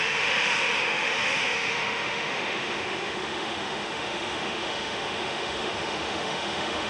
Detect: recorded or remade remade